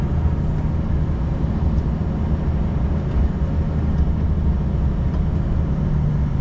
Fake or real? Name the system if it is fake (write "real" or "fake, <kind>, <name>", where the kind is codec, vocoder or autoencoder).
real